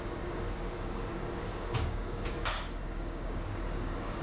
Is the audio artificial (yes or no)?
yes